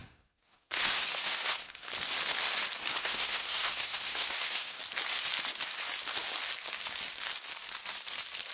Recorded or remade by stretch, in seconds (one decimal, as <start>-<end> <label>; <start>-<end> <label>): 0.0-1.9 remade; 1.9-3.0 recorded; 3.0-4.8 remade; 4.8-8.5 recorded